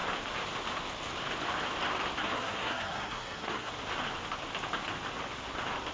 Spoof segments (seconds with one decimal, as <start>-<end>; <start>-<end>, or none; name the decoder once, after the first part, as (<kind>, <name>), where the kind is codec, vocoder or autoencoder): 2.2-3.7 (codec, SNAC)

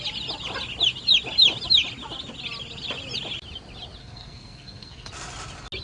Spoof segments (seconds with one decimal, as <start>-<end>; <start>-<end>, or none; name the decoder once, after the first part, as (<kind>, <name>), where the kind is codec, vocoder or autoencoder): 4.0-5.1 (codec, SNAC)

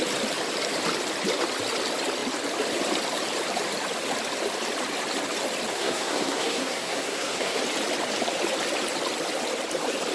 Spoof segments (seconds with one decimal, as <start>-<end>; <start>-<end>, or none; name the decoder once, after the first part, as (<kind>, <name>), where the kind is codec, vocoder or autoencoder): 5.7-7.6 (codec, SNAC)

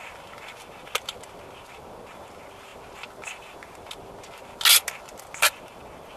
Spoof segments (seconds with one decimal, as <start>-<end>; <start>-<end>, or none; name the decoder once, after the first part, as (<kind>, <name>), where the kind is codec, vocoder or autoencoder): none

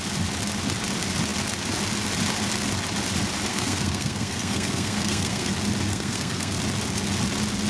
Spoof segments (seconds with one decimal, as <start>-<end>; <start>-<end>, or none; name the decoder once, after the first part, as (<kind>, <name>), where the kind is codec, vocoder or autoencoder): 3.5-5.5 (codec, SNAC); 5.9-6.6

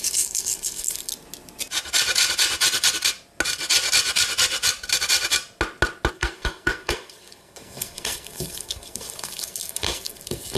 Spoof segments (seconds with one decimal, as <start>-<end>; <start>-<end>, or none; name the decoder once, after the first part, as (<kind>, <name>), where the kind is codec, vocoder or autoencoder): 0.0-1.1 (codec, SNAC); 6.1-10.6

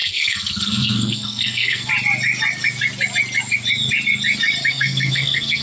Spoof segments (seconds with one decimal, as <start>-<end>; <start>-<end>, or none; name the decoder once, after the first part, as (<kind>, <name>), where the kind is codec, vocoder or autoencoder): 0.0-1.9 (codec, SNAC); 4.7-5.6